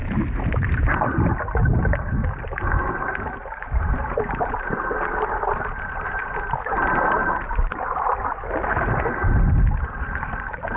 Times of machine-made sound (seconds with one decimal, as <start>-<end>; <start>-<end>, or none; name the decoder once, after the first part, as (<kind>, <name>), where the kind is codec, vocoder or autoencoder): 2.9-6.2 (vocoder, BigVGAN v2); 10.0-10.8